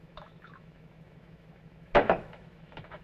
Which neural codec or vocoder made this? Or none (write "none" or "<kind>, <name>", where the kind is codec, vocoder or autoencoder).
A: autoencoder, DAC-VAE